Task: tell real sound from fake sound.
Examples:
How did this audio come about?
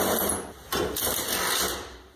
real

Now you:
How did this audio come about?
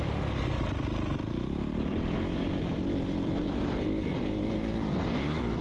real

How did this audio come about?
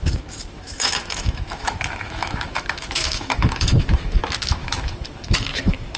fake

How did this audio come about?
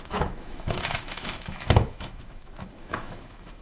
fake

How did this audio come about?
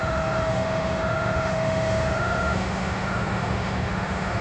fake